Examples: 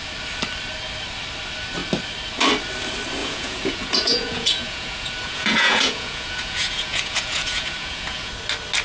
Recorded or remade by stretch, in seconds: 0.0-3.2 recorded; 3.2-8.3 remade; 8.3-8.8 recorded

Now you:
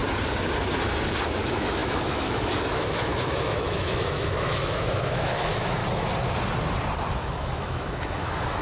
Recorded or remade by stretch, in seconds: 0.0-1.4 recorded; 1.4-5.8 remade; 5.8-7.1 recorded; 7.1-8.6 remade

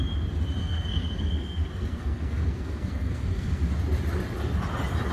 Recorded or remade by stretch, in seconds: 0.0-0.6 recorded; 0.6-3.7 remade; 3.7-5.1 recorded

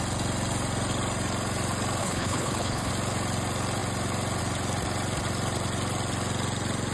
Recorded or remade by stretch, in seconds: 0.0-2.0 recorded; 2.0-2.9 remade; 2.9-6.9 recorded

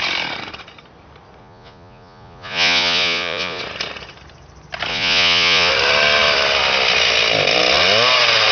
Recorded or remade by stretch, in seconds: 0.0-1.4 recorded; 1.4-3.6 remade; 3.6-4.9 recorded; 4.9-5.7 remade; 5.7-8.5 recorded

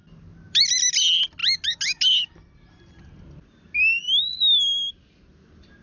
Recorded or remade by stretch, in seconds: 0.0-5.8 recorded

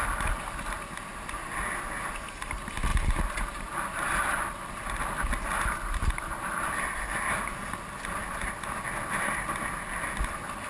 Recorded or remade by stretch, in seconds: 0.0-10.7 recorded